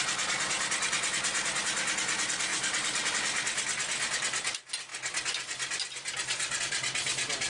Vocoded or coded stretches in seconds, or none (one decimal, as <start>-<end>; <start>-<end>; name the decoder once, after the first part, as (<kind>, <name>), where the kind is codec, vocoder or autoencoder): 2.5-3.1 (vocoder, BigVGAN v2)